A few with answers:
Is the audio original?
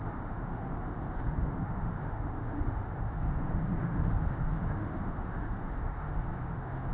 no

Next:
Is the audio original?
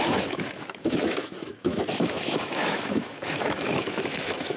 no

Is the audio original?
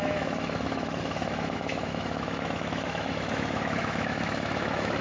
no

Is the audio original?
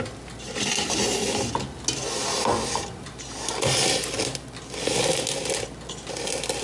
yes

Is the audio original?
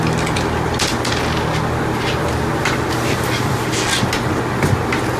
yes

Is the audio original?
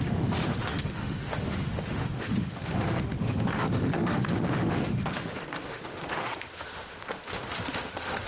no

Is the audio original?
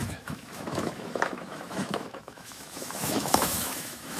no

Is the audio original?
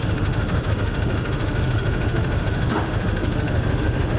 no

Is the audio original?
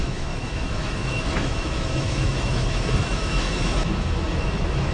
no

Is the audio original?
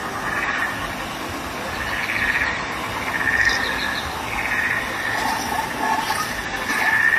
yes